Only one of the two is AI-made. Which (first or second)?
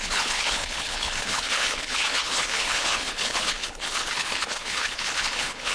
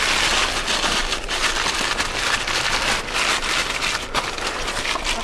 first